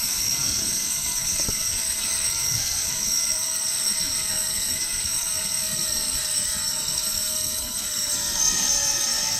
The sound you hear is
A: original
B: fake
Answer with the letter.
B